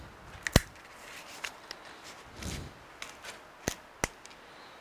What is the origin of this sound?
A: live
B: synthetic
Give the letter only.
A